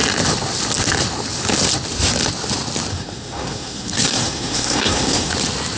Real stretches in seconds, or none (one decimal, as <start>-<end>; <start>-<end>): 0.0-2.9; 5.3-5.8